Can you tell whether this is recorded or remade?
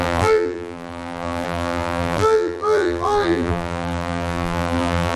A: remade